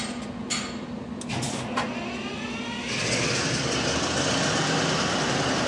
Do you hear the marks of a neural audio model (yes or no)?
no